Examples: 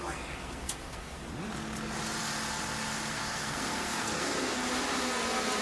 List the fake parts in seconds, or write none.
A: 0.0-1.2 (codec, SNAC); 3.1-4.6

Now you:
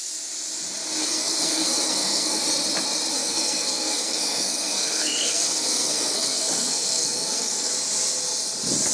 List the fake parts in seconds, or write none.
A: 1.0-2.4 (codec, SNAC); 3.1-7.7

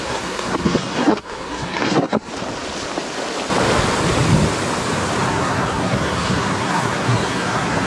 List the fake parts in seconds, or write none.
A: 0.0-2.3 (codec, SNAC); 5.3-7.9

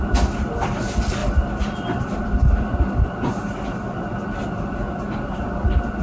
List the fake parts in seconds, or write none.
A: none

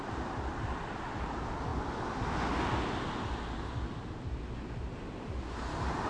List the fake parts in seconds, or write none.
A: none

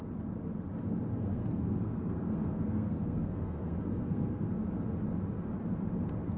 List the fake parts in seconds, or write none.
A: 1.1-4.5 (codec, SNAC)

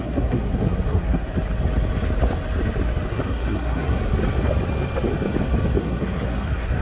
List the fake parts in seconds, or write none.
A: 0.0-1.3 (codec, SNAC); 3.1-4.0; 5.8-6.8